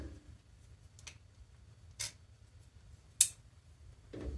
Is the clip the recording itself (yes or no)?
yes